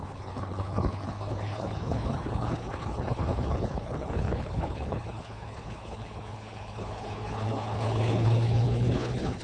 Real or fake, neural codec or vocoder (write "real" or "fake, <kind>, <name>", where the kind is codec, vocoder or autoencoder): fake, codec, HILCodec